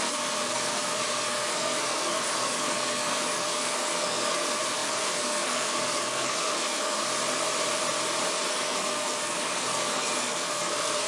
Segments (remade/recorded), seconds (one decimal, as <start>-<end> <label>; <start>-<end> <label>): 0.0-7.0 remade; 7.0-8.5 recorded; 8.5-11.1 remade